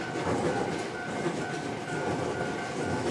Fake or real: real